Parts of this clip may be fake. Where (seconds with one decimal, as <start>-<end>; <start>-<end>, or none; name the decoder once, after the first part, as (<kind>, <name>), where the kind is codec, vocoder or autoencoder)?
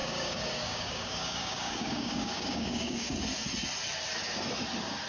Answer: 0.0-3.1 (codec, DAC)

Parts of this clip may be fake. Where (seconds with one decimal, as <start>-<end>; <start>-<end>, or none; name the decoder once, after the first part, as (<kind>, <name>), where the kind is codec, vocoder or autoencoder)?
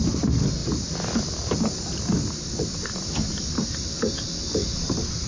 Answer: 0.6-3.1 (vocoder, BigVGAN v2)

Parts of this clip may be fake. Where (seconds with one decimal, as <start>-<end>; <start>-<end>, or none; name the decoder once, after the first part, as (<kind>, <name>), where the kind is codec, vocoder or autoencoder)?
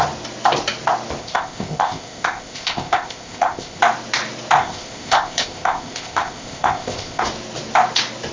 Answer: 1.2-3.8 (codec, ZipCodec); 4.6-7.2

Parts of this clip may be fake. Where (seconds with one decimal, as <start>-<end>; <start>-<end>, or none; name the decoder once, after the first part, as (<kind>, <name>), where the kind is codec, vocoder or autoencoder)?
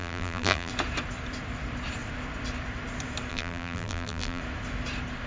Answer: 0.0-0.7 (vocoder, BigVGAN v2); 3.3-4.4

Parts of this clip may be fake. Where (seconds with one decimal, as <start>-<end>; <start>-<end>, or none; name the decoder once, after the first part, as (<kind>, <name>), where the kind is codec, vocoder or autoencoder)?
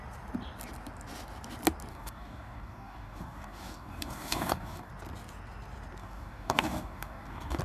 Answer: 1.9-4.9 (codec, DAC); 6.0-7.6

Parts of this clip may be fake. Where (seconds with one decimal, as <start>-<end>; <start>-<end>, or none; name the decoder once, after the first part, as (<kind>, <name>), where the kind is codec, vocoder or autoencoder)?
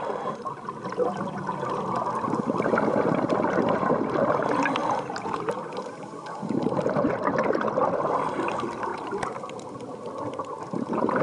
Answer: 4.8-5.4 (vocoder, BigVGAN v2)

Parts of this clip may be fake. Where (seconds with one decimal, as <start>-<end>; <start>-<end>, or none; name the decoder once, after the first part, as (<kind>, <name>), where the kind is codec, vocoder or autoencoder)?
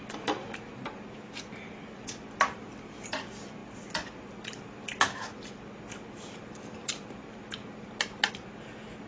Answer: none